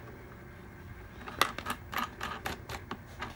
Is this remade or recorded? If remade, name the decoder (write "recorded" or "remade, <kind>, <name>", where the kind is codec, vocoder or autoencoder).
recorded